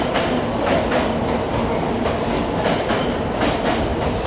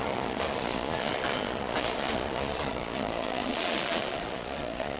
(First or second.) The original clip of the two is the first